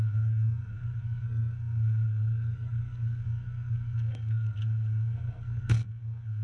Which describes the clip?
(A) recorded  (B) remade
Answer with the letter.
B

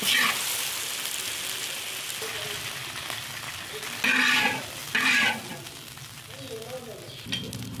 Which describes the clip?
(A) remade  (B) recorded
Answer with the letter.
B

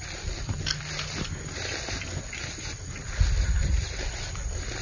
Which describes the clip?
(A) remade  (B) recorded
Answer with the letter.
B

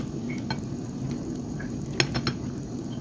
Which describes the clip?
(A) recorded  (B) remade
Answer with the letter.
A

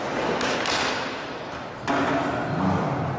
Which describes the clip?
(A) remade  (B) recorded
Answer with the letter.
B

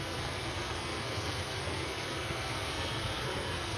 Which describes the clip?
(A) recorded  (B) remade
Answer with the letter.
B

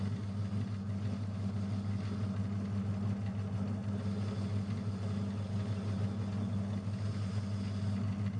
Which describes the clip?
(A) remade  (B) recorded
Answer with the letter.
B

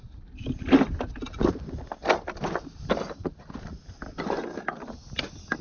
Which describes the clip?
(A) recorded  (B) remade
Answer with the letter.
A